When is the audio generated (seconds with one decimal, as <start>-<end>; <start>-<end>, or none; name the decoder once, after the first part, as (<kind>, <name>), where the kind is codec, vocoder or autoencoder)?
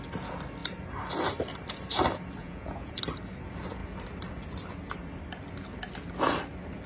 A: 2.4-3.0 (vocoder, Vocos)